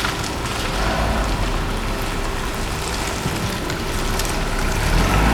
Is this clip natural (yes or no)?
yes